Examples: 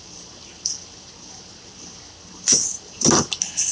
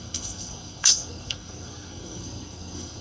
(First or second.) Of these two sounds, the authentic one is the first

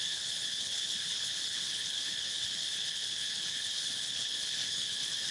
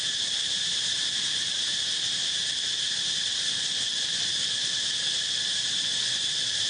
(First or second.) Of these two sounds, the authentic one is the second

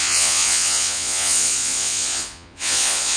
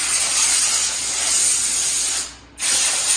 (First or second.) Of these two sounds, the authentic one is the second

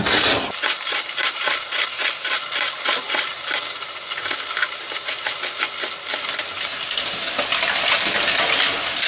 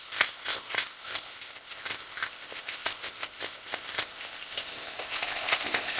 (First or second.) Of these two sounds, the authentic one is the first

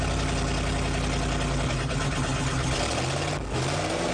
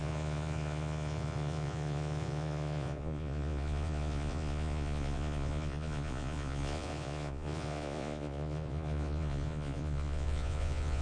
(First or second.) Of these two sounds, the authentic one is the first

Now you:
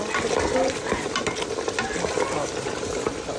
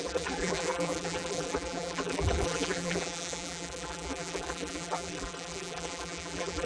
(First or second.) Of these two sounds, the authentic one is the first